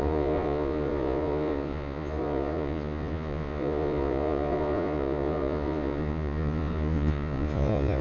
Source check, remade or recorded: remade